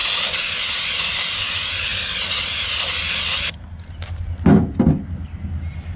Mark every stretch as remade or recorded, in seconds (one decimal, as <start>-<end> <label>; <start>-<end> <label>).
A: 0.0-6.0 recorded